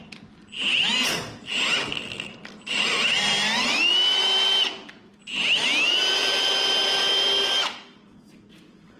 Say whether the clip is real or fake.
real